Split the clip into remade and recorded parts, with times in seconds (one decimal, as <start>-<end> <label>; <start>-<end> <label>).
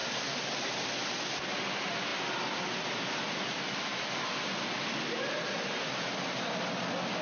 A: 0.0-7.2 recorded